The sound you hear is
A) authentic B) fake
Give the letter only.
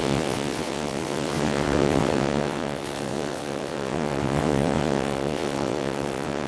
B